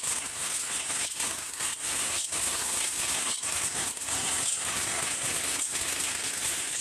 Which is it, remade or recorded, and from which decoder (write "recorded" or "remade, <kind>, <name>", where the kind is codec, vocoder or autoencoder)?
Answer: remade, codec, SNAC